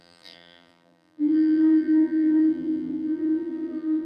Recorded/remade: remade